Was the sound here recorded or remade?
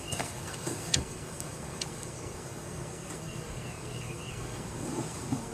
remade